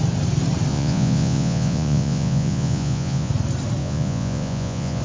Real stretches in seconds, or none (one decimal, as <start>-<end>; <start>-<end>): 0.0-0.7; 3.3-3.8